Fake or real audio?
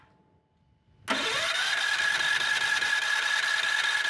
real